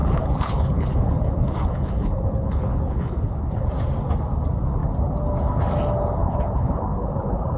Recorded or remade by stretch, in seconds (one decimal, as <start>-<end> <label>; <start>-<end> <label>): 0.0-3.7 remade; 3.7-6.2 recorded; 6.2-7.6 remade